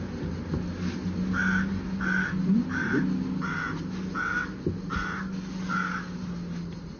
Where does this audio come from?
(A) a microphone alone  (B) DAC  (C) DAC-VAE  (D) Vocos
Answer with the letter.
A